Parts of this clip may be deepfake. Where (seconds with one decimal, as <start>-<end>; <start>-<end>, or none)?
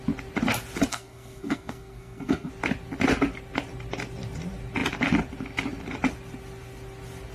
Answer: 0.9-2.5